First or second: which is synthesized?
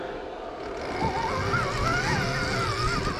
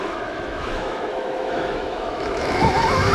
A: second